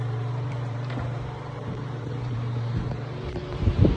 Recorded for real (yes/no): no